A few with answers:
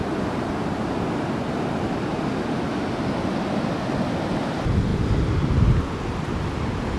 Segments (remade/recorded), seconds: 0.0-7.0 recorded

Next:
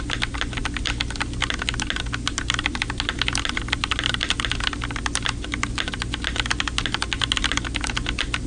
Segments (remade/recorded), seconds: 0.0-8.5 recorded

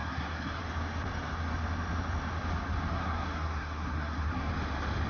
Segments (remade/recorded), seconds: 0.0-0.6 remade; 0.6-2.9 recorded; 2.9-4.5 remade; 4.5-5.1 recorded

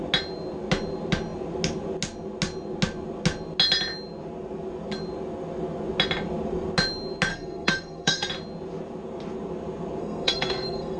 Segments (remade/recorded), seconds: 0.0-7.3 recorded; 7.3-8.3 remade; 8.3-10.0 recorded; 10.0-11.0 remade